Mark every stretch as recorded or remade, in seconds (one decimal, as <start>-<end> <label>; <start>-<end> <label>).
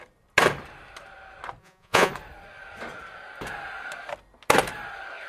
0.0-1.6 recorded; 1.6-2.1 remade; 2.1-5.3 recorded